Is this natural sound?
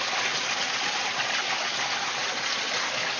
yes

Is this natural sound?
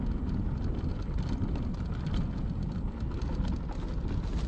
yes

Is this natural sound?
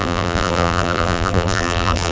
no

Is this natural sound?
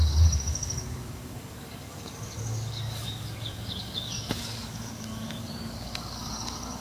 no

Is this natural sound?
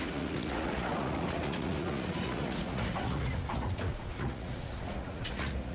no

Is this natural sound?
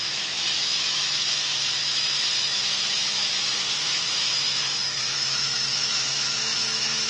no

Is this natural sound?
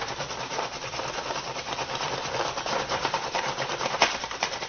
no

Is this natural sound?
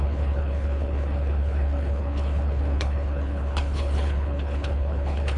no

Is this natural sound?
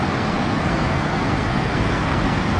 no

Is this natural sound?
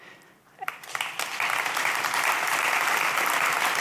no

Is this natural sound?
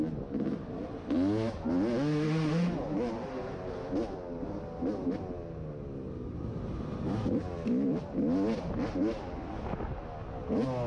yes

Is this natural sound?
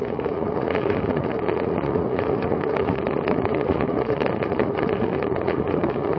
no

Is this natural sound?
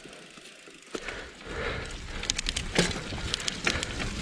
yes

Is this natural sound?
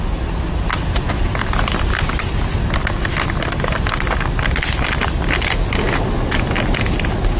yes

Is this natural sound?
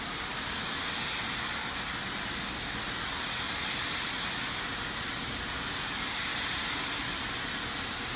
yes